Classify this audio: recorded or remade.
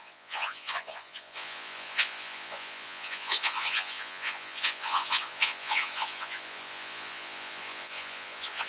remade